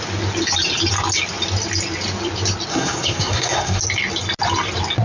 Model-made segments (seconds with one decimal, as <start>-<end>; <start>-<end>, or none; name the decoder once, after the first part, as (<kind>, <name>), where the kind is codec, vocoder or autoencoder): 2.7-3.8 (codec, SNAC)